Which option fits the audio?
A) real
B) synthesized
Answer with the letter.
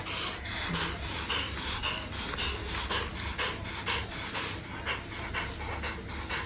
A